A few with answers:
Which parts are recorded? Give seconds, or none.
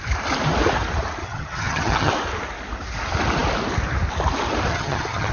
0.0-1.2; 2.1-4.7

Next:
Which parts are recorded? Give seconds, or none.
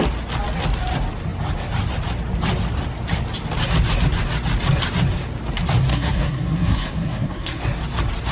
0.0-5.9; 7.6-8.3